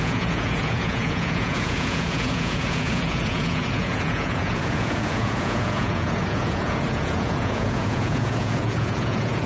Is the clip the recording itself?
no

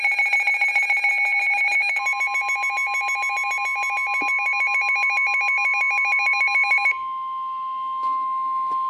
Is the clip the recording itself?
yes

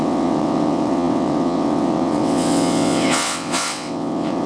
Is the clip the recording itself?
no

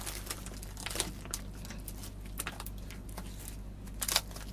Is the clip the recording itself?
yes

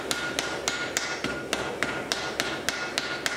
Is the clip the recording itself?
yes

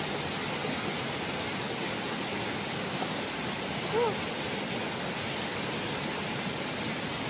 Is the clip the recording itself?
yes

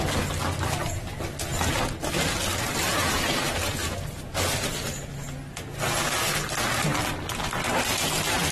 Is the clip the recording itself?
yes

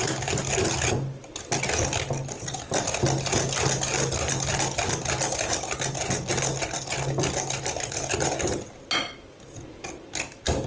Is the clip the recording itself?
yes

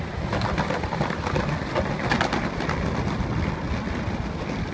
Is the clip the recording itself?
yes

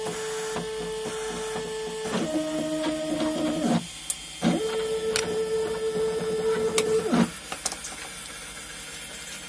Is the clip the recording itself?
yes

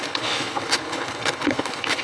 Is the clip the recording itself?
no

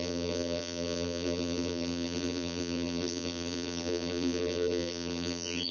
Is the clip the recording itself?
no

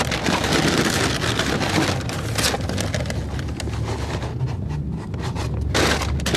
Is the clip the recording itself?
yes